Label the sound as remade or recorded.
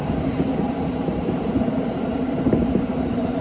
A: remade